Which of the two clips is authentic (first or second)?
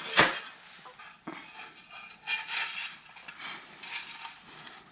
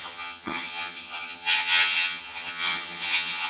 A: first